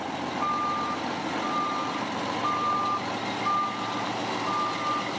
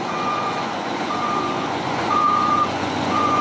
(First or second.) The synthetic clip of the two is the second